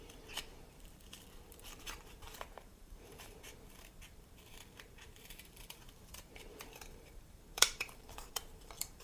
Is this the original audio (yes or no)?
no